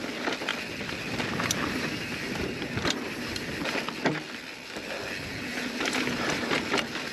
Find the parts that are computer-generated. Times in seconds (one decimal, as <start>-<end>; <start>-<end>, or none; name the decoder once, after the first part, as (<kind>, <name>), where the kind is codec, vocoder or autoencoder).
none